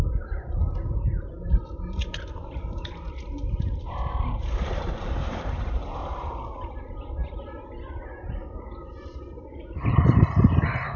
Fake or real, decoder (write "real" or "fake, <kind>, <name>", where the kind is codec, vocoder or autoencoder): fake, vocoder, BigVGAN v2